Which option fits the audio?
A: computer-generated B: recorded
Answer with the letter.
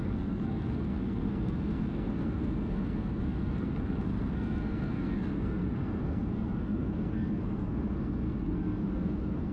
A